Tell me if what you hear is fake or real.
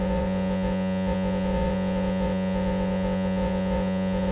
fake